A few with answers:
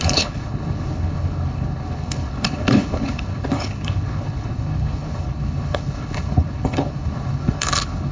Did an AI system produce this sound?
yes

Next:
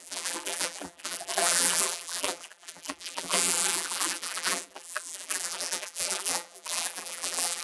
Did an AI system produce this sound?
yes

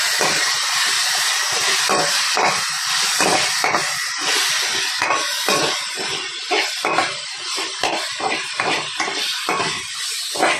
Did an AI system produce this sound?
no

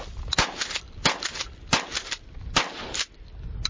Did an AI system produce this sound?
no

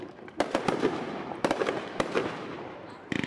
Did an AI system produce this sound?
yes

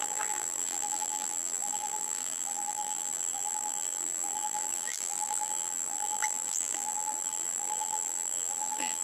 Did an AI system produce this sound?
yes